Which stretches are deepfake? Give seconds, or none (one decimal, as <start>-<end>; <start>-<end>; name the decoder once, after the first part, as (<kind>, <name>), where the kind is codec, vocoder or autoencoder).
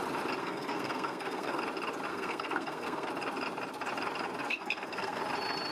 0.4-1.6 (codec, SNAC); 2.1-3.1; 4.5-5.2